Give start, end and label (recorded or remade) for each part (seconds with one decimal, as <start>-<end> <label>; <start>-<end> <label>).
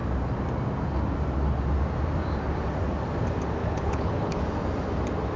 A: 0.0-3.6 recorded; 3.6-4.4 remade; 4.4-5.4 recorded